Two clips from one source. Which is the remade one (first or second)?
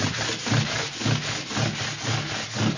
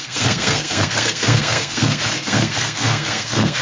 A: second